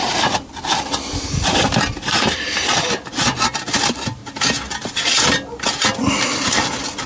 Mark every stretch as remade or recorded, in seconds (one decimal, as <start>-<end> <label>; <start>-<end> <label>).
0.0-3.8 recorded; 3.8-4.2 remade; 4.2-4.9 recorded; 4.9-7.1 remade